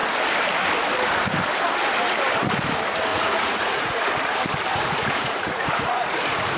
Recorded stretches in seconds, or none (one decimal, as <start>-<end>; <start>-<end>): 0.0-3.1; 4.1-4.7